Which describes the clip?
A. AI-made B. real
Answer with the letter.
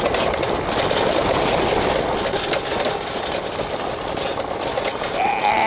B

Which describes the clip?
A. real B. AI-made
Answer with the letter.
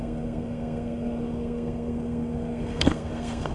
B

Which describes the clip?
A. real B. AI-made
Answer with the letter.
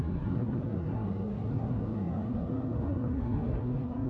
B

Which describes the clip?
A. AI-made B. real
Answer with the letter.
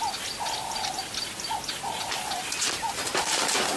B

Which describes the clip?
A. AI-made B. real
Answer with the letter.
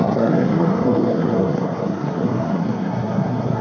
A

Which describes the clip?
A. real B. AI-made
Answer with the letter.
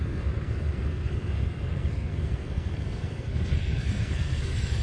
B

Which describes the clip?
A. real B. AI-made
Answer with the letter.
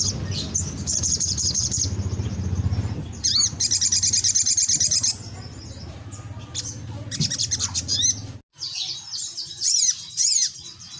A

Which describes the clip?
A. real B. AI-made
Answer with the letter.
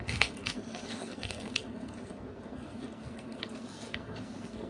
B